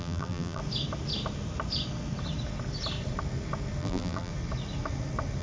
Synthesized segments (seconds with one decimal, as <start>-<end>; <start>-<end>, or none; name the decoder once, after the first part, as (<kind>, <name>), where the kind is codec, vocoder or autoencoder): 0.0-0.6 (vocoder, BigVGAN v2); 3.8-4.3